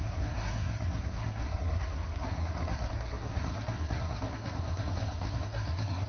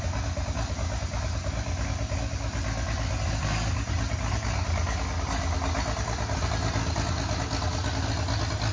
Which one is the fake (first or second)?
first